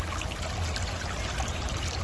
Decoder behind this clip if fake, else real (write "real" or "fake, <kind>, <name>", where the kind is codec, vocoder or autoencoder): real